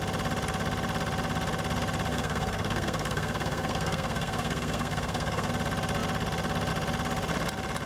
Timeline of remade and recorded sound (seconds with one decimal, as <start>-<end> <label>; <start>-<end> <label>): 0.0-2.1 recorded; 2.1-5.5 remade; 5.5-7.9 recorded